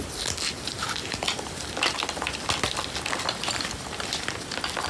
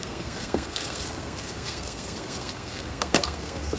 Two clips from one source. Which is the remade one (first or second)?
second